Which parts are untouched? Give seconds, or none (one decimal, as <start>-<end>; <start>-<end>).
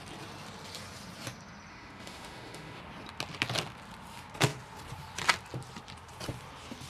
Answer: 0.0-1.7; 2.8-6.9